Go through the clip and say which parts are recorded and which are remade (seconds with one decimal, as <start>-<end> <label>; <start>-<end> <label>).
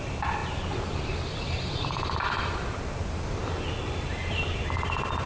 0.0-5.3 recorded